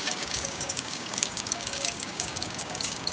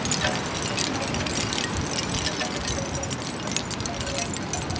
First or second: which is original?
second